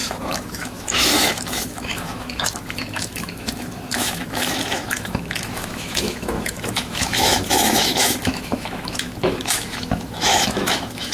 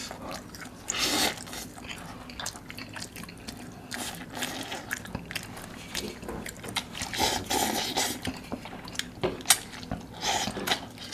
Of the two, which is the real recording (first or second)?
second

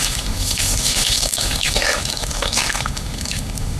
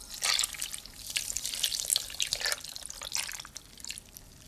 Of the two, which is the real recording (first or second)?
second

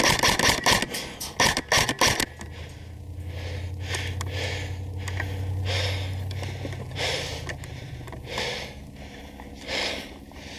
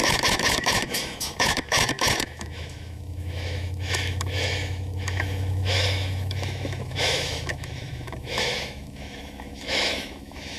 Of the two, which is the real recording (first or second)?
first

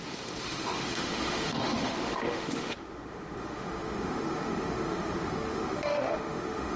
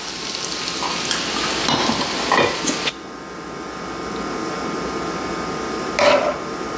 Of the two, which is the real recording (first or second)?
second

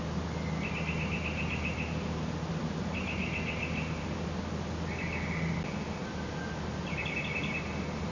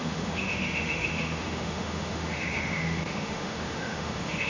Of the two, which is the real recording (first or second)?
first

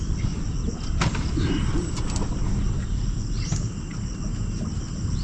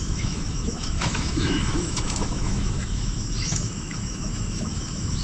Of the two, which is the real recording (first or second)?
first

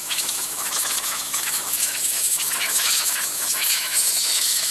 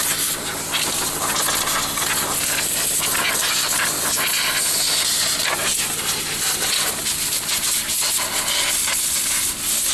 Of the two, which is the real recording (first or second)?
second